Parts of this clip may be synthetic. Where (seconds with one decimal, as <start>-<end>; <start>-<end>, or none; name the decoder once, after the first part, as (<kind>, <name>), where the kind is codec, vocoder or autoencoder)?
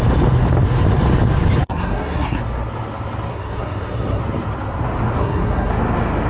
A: 1.6-2.4 (codec, SNAC); 3.3-4.2; 5.2-5.7